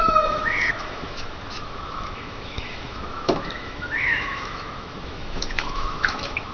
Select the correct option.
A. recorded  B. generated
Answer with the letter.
B